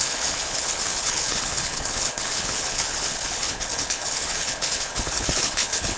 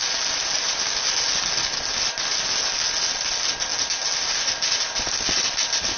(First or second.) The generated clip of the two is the first